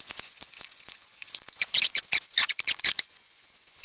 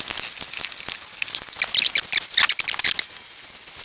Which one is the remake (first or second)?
first